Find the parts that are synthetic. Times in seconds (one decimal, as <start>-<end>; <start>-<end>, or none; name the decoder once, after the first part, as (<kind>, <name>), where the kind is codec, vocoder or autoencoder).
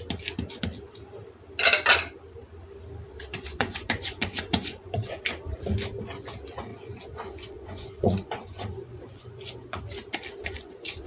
3.3-5.1 (vocoder, Vocos); 6.7-9.8; 10.4-11.1